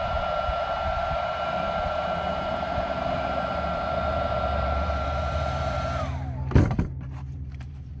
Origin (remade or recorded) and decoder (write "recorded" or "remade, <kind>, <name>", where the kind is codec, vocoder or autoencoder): remade, vocoder, BigVGAN v2